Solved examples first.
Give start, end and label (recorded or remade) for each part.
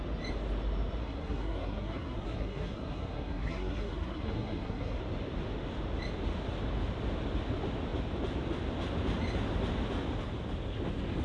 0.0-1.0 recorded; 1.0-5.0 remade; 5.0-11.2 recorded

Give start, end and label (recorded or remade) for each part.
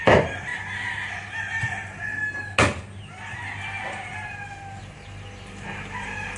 0.0-0.5 remade; 0.5-1.4 recorded; 1.4-2.1 remade; 2.1-4.8 recorded; 4.8-6.4 remade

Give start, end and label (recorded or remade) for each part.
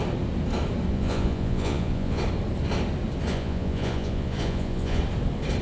0.0-0.9 recorded; 0.9-2.2 remade; 2.2-3.3 recorded; 3.3-5.0 remade; 5.0-5.6 recorded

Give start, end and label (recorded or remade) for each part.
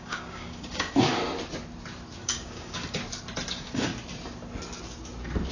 0.0-1.2 remade; 1.2-2.2 recorded; 2.2-3.0 remade; 3.0-3.5 recorded; 3.5-3.9 remade; 3.9-5.5 recorded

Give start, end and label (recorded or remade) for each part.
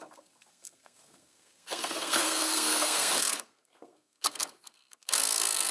0.0-5.7 remade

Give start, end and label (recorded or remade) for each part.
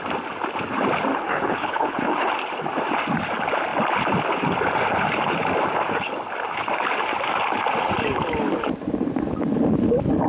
0.0-1.1 recorded; 1.1-2.3 remade; 2.3-10.3 recorded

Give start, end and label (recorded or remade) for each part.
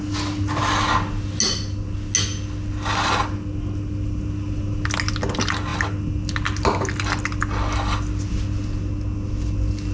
0.0-9.9 recorded